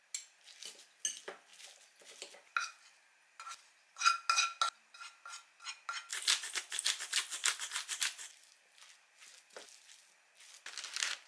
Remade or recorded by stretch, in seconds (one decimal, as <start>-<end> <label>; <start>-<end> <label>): 0.0-11.3 recorded